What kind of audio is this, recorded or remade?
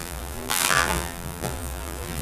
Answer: remade